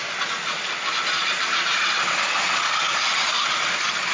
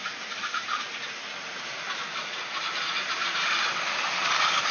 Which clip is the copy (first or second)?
second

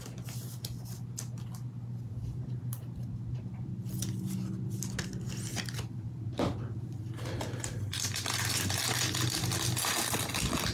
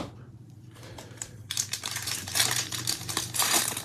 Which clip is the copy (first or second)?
second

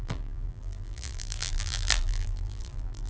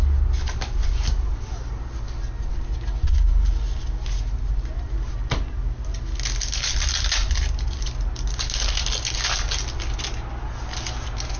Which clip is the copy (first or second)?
first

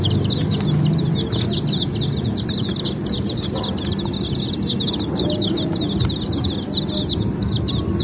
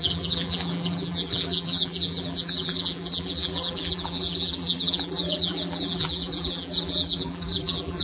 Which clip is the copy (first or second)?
second